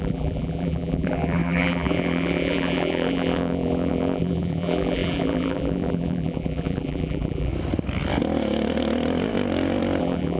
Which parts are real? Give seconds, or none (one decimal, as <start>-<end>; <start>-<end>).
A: 7.5-10.0